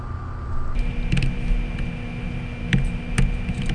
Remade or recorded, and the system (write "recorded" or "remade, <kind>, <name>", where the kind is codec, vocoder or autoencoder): recorded